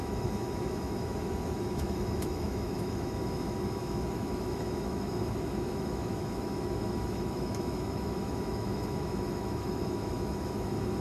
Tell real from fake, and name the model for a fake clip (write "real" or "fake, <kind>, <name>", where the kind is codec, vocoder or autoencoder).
fake, autoencoder, DAC-VAE